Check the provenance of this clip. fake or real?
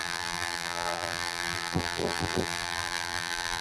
fake